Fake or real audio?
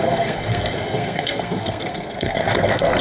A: fake